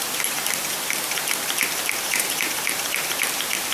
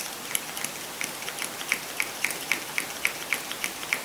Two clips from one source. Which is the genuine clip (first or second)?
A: second